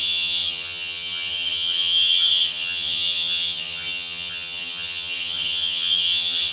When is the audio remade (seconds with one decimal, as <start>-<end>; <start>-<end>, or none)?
0.0-6.5